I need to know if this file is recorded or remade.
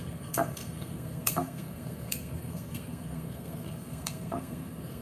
remade